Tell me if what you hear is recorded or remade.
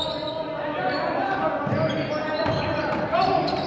recorded